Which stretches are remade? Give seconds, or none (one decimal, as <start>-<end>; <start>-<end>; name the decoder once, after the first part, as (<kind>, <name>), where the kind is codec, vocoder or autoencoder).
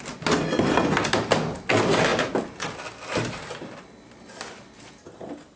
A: none